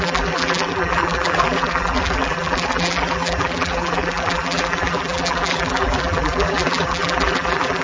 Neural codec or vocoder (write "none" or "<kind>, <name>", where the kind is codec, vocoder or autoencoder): vocoder, BigVGAN v2